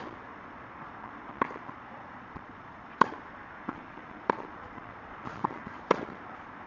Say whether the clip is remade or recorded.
remade